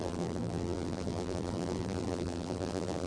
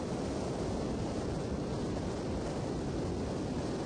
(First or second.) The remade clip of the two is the first